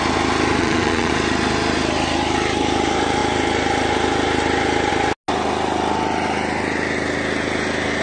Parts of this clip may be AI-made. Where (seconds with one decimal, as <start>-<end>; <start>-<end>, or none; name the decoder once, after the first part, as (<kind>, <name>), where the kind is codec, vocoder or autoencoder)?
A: 0.6-1.1 (vocoder, Vocos)